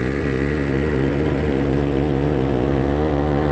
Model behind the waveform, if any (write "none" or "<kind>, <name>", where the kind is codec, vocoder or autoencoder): vocoder, Vocos